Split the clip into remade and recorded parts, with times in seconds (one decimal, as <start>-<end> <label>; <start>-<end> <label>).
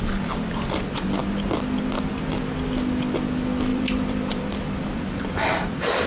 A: 0.0-3.7 recorded; 3.7-5.5 remade; 5.5-6.1 recorded